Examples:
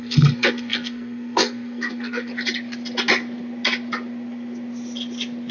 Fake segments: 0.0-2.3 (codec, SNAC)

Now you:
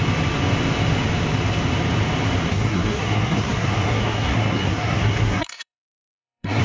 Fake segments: 2.5-6.6 (codec, SNAC)

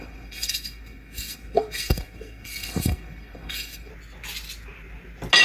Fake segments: 0.0-3.9 (codec, SNAC)

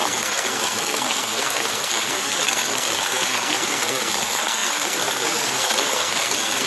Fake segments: 0.0-6.7 (codec, SNAC)